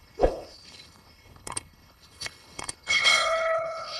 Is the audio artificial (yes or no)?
yes